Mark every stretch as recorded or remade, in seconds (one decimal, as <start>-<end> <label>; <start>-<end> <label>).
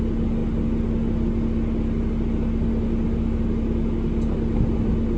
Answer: 0.0-5.2 recorded